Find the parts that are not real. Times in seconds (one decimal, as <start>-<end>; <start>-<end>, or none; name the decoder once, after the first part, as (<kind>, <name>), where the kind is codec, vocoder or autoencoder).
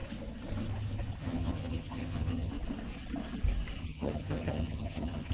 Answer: 1.2-2.5 (vocoder, HiFi-GAN); 3.8-5.3